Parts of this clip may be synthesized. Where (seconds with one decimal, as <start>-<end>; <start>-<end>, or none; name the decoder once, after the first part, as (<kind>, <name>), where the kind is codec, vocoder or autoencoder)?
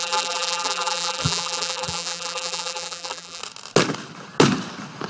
0.0-3.4 (vocoder, BigVGAN v2)